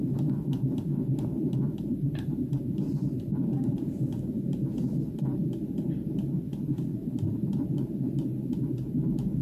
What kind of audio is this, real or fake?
fake